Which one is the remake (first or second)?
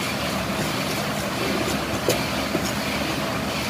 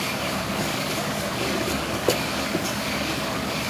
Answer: second